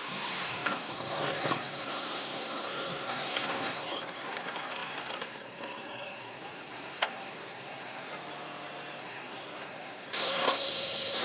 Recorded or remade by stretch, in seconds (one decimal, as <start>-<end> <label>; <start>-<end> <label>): 0.0-8.1 remade; 8.1-9.0 recorded; 9.0-11.2 remade